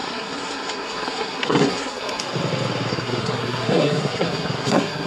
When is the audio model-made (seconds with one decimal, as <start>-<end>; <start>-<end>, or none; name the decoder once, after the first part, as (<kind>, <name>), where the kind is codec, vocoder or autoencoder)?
0.0-2.2 (codec, SNAC); 2.9-5.1